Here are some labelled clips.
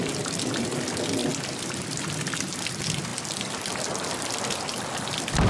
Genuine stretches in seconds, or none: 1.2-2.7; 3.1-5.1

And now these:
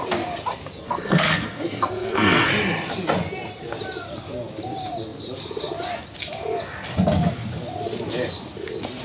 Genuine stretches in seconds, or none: 0.0-0.8; 2.5-9.0

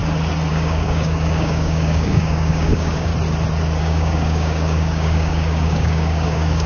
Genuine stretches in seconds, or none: 0.0-0.5; 3.1-3.8

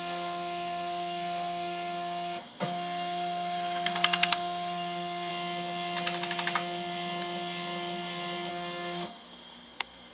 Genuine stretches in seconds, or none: 5.3-8.5

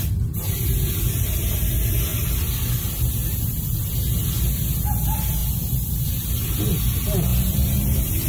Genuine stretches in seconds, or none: 0.0-7.3